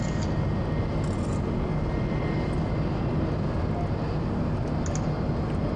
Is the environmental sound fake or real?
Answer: real